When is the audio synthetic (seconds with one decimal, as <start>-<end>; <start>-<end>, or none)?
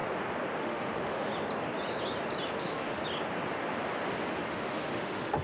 0.6-1.3; 2.6-3.0; 4.5-5.4